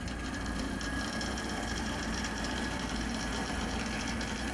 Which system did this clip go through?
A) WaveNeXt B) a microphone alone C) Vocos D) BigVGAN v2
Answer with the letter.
D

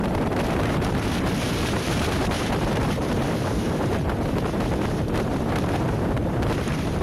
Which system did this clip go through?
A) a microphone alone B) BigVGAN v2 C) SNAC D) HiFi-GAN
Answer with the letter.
B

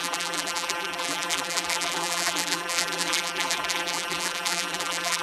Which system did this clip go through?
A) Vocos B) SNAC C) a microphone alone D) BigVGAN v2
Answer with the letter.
D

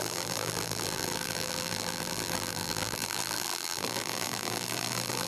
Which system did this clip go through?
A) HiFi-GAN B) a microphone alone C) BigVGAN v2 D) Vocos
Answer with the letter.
C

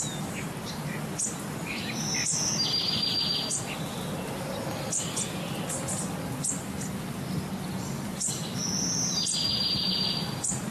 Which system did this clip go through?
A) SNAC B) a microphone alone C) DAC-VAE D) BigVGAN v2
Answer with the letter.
B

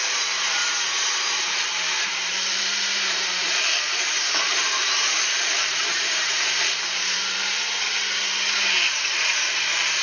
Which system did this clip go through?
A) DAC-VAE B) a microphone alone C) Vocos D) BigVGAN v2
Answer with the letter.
D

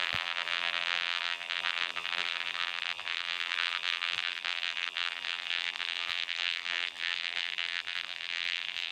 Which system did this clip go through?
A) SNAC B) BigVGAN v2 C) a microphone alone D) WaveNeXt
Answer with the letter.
B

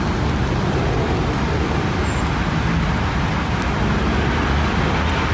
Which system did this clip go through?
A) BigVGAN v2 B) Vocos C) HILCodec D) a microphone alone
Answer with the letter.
D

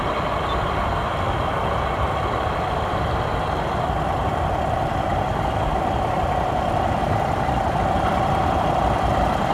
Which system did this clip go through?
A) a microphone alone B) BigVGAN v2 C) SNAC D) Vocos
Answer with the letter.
B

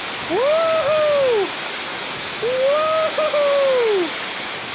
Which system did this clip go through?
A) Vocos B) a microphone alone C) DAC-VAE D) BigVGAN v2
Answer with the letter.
B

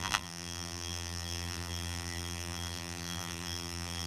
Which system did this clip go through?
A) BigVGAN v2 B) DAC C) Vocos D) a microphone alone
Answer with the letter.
A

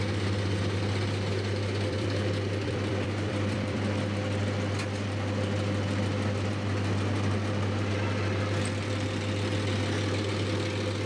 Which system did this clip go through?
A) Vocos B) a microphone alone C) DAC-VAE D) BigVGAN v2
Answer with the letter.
D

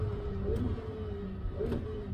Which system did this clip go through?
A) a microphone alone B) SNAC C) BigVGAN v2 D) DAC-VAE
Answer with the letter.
C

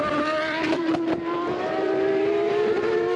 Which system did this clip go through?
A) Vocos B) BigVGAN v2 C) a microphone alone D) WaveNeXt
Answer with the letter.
B